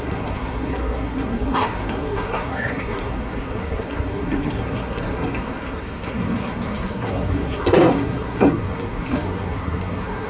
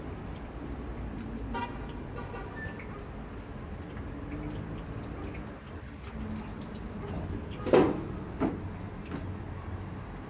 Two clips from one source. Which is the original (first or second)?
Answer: second